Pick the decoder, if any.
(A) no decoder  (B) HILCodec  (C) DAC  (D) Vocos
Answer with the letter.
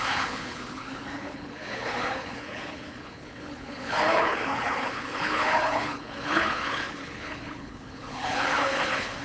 B